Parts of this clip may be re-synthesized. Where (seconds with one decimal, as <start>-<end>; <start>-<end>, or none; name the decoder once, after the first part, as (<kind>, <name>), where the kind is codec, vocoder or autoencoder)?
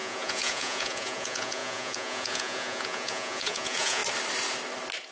0.0-4.0 (vocoder, Vocos)